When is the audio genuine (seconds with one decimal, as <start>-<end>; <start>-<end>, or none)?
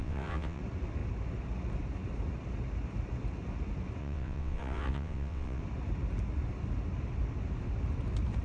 0.6-4.0; 5.6-8.4